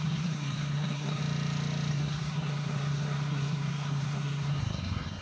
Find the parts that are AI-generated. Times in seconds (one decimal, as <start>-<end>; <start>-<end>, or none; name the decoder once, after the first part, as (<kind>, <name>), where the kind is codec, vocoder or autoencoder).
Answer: 0.0-1.2 (codec, SNAC); 1.9-5.2